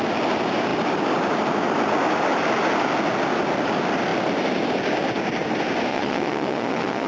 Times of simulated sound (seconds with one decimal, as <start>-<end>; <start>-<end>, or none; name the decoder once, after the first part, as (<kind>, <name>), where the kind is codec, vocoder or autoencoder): 5.9-7.1 (vocoder, Vocos)